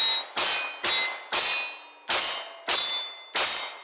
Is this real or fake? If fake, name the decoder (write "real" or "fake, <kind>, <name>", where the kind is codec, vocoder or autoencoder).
real